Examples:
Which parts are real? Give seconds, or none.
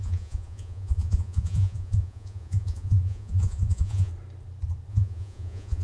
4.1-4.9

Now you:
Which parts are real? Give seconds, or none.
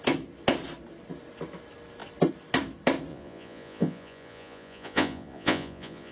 0.0-3.1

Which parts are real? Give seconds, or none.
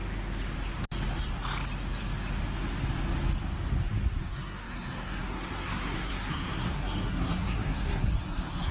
0.0-4.2